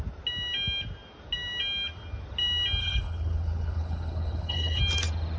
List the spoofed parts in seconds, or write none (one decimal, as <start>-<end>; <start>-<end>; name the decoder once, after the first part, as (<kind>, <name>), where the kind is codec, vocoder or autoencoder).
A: 2.8-4.8 (codec, HILCodec)